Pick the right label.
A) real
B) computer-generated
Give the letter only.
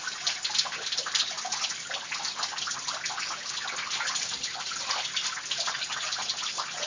A